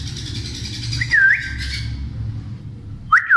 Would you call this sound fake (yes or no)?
no